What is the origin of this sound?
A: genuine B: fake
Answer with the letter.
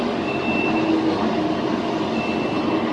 A